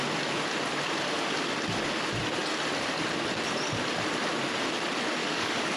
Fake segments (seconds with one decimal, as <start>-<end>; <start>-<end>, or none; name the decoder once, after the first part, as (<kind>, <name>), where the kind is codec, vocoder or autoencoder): 5.2-5.8 (codec, DAC)